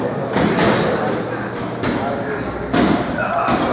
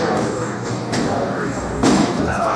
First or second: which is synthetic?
second